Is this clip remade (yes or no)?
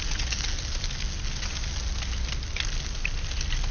no